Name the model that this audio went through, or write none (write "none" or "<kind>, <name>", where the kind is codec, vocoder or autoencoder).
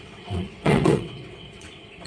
vocoder, WaveNeXt